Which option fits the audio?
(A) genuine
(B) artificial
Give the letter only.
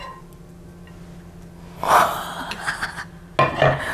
A